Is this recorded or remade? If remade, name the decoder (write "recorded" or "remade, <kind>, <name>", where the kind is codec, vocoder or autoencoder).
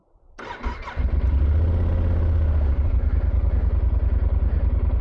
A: recorded